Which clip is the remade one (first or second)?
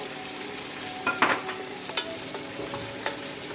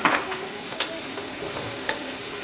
second